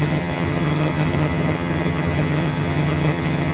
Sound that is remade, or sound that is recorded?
remade